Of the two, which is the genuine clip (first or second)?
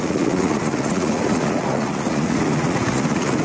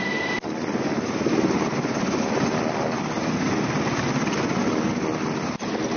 second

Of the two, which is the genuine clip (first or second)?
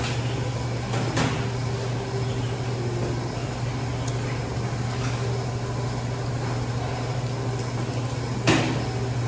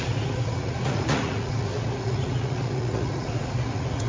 first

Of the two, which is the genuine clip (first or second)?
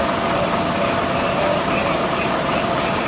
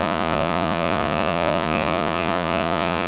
first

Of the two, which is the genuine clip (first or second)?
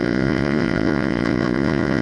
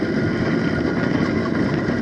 second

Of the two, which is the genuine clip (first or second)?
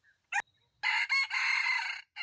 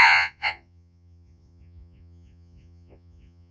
first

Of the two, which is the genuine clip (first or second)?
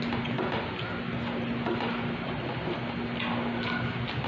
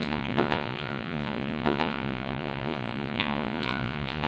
first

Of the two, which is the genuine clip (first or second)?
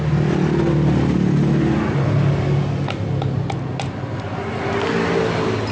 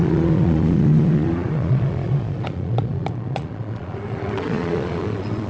first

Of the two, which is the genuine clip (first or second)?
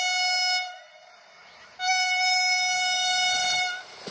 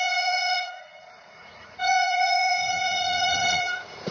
first